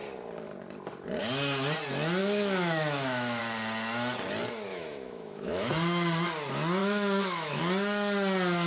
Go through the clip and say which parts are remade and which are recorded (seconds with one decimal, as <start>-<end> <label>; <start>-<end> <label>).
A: 0.0-2.2 recorded; 2.2-3.4 remade; 3.4-4.7 recorded; 4.7-5.7 remade; 5.7-6.8 recorded; 6.8-7.6 remade; 7.6-8.7 recorded